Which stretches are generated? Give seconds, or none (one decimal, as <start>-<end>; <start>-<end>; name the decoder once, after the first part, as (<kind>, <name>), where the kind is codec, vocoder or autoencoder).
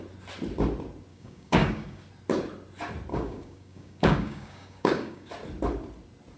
1.1-2.0 (codec, DAC); 3.1-5.3